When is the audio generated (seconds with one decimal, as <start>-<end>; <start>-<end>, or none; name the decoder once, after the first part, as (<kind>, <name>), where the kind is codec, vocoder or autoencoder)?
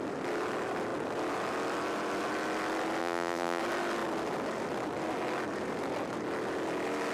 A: 3.0-3.6 (vocoder, BigVGAN v2)